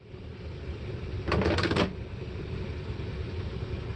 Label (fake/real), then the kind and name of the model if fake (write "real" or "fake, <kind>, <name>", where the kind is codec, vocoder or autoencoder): real